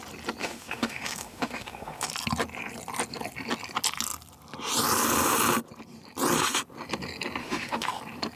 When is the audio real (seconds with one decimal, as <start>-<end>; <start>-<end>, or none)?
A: 0.0-0.4; 2.1-7.4; 8.0-8.4